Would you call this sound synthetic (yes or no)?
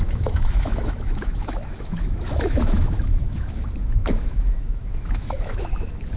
yes